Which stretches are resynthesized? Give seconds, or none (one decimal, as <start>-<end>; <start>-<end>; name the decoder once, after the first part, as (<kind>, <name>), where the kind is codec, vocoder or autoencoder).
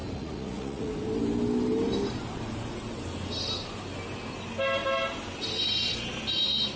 0.0-0.9 (vocoder, Vocos)